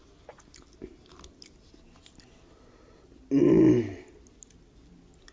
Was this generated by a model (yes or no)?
no